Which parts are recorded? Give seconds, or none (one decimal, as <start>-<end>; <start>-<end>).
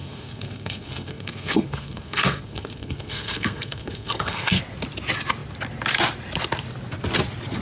4.6-7.6